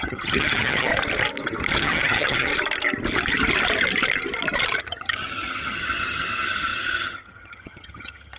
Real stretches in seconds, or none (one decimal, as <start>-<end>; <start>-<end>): 0.9-1.8; 2.5-4.8